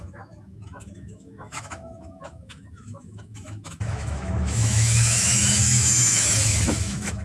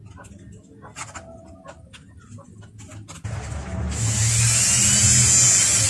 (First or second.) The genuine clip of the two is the second